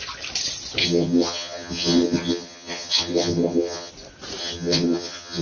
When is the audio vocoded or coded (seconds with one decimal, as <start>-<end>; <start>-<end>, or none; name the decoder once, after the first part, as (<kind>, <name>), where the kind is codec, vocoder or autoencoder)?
0.8-3.9 (vocoder, HiFi-GAN); 4.4-5.4